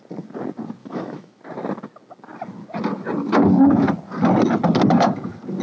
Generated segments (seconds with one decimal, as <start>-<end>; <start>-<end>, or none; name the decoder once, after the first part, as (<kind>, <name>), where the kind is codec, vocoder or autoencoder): 0.8-1.4 (autoencoder, DAC-VAE)